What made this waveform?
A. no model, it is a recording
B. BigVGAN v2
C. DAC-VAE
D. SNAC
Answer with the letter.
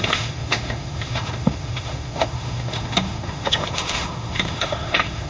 C